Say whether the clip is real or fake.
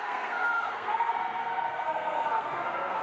fake